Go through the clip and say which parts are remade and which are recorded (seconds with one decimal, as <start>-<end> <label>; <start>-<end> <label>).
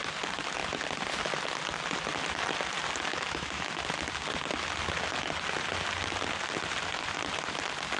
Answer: 0.0-3.1 recorded; 3.1-3.8 remade; 3.8-8.0 recorded